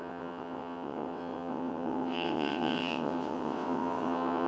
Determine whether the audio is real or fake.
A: fake